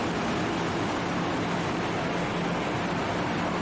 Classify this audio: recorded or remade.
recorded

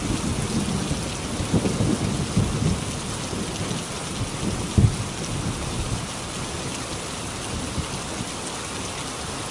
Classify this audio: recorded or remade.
recorded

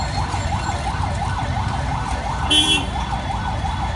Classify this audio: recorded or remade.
remade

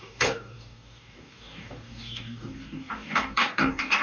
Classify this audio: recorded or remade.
remade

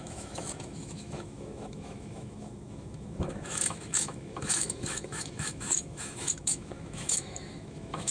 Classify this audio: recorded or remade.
remade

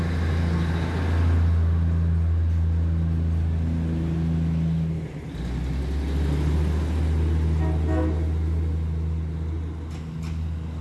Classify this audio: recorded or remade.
recorded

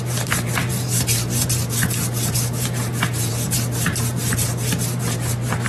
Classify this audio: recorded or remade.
remade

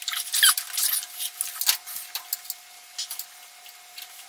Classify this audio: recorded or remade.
recorded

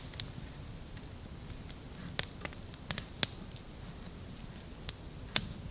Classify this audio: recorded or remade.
recorded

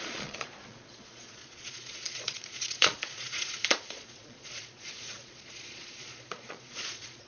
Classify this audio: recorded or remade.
remade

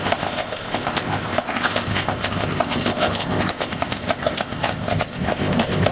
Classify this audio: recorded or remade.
remade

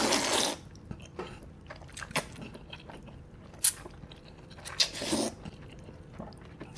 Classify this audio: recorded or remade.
recorded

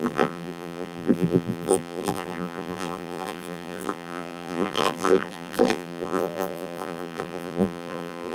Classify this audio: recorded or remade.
remade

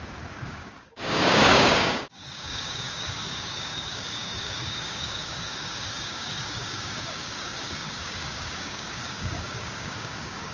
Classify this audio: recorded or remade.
remade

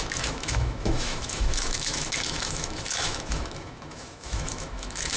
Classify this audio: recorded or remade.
remade